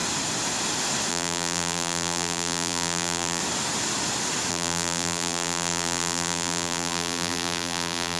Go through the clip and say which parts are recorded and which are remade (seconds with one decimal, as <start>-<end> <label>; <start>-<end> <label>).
0.0-1.1 recorded; 1.1-3.4 remade; 3.4-4.5 recorded; 4.5-8.2 remade